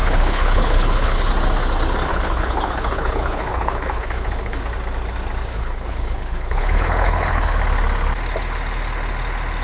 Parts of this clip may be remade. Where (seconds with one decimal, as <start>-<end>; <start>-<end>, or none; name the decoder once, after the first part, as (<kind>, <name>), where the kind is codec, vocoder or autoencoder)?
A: 0.0-1.3 (codec, HILCodec); 2.1-4.6; 5.5-7.6